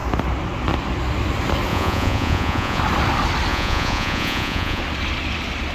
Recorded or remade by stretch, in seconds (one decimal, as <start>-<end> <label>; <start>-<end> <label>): 0.0-1.7 recorded; 1.7-2.8 remade; 2.8-3.5 recorded; 3.5-4.8 remade; 4.8-5.7 recorded